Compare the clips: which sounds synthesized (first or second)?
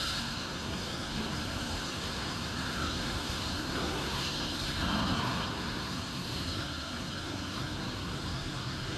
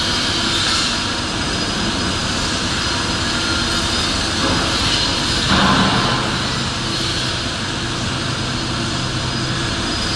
first